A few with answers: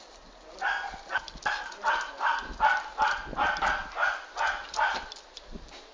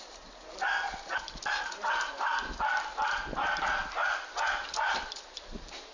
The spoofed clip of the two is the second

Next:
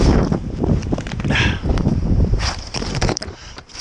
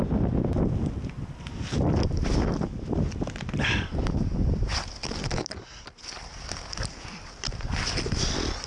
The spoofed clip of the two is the first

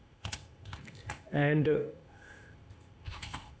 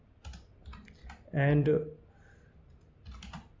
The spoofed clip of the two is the first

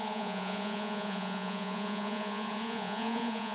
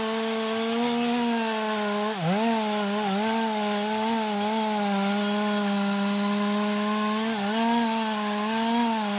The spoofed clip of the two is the first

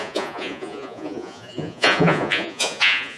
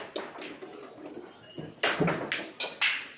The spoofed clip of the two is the first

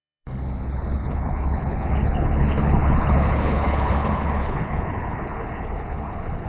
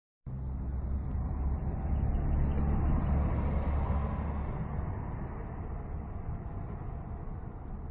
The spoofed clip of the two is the first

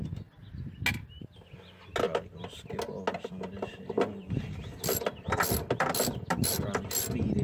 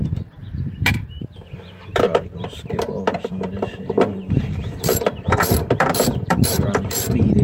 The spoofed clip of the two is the second